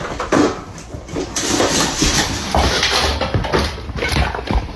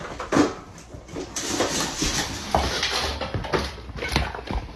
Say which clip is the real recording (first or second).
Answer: second